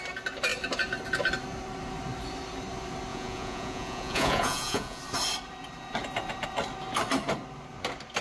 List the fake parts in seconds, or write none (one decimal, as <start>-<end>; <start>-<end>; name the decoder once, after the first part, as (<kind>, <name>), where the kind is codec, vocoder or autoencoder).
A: 3.1-5.0 (vocoder, Vocos)